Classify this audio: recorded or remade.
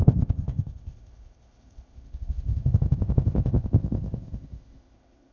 remade